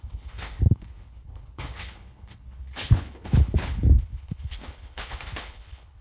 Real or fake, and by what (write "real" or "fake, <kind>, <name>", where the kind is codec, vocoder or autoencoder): fake, codec, HILCodec